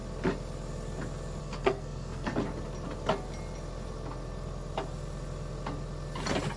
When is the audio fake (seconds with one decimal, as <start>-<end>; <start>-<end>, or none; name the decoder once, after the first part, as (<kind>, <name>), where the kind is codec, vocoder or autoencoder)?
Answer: 1.4-2.3 (codec, SNAC)